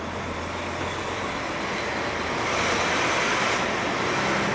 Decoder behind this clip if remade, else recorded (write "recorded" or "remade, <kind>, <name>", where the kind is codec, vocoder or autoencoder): recorded